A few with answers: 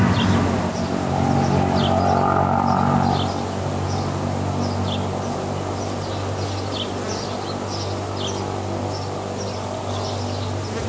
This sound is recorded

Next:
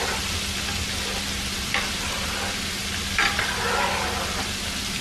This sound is recorded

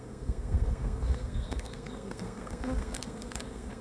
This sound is remade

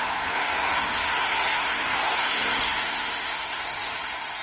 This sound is remade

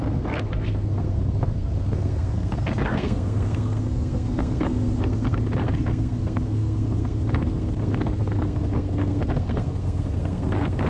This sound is remade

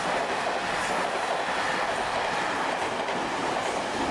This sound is recorded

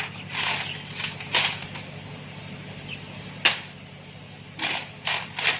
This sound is recorded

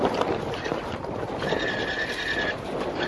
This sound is recorded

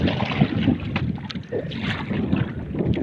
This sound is recorded